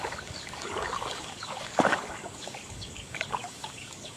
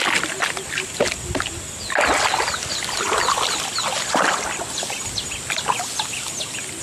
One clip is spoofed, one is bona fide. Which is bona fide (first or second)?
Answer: second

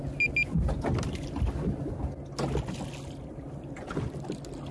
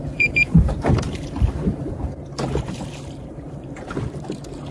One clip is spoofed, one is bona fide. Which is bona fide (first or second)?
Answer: first